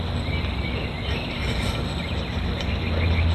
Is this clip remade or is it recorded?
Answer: recorded